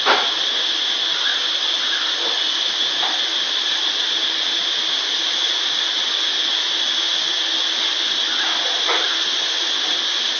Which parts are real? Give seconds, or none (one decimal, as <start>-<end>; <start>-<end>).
0.0-5.4; 5.9-10.4